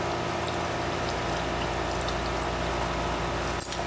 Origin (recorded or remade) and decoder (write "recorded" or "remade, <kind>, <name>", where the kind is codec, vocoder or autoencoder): recorded